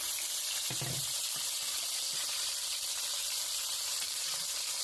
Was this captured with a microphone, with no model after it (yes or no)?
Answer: no